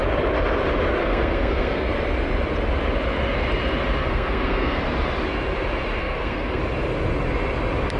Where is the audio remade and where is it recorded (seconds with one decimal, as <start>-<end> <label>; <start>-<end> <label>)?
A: 0.0-1.0 recorded; 1.0-1.9 remade; 1.9-4.0 recorded; 4.0-4.8 remade; 4.8-6.0 recorded; 6.0-6.6 remade; 6.6-8.0 recorded